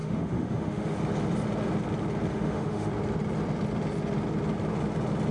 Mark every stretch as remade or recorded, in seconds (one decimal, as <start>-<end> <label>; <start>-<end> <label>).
0.0-1.0 remade; 1.0-2.3 recorded; 2.3-2.9 remade; 2.9-5.3 recorded